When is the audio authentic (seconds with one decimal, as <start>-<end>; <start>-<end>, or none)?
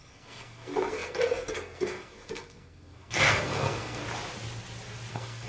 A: 4.0-5.1